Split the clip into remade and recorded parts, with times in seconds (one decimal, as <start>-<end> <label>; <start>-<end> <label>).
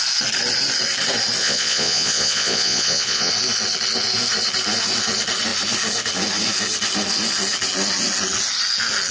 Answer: 0.0-1.4 recorded; 1.4-3.3 remade; 3.3-9.1 recorded